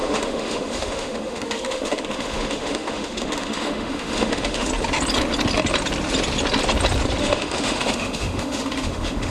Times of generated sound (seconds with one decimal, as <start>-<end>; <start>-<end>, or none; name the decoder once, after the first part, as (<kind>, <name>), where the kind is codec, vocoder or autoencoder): 0.0-4.7 (autoencoder, DAC-VAE); 7.2-9.3